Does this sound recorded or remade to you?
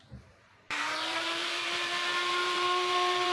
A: remade